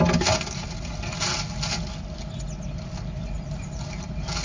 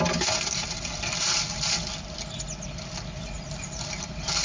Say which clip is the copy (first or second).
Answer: second